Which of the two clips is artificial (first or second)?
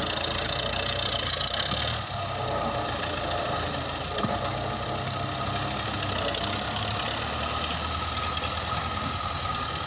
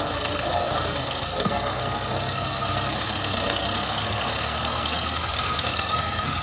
second